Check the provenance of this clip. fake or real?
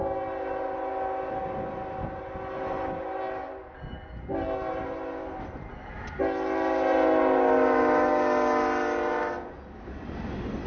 real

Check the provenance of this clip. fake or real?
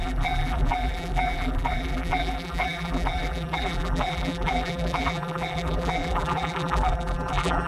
fake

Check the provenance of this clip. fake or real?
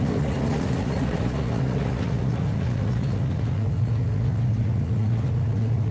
fake